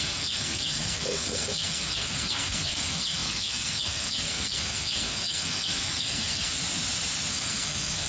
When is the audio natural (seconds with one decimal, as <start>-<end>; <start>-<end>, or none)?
6.6-7.3